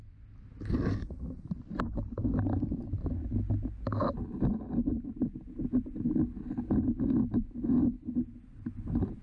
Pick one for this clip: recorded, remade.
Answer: recorded